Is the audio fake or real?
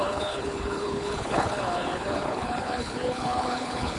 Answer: fake